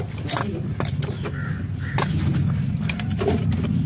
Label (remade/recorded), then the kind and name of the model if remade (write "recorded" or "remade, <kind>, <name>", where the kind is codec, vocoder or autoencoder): recorded